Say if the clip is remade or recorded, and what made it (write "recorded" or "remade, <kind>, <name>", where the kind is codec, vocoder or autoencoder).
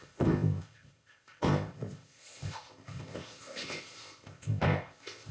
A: remade, codec, ZipCodec